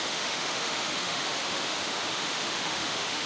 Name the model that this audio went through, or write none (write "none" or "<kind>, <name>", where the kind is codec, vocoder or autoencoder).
autoencoder, DAC-VAE